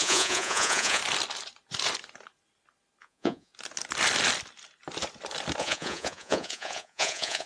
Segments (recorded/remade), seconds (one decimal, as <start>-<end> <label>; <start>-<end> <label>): 0.0-1.0 remade; 1.0-3.0 recorded; 3.0-3.5 remade; 3.5-5.6 recorded; 5.6-7.5 remade